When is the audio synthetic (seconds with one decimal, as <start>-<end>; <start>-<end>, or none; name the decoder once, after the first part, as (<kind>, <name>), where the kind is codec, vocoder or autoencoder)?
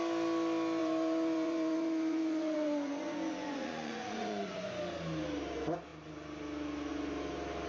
0.8-4.7 (vocoder, Vocos)